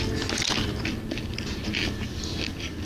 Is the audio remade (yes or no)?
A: no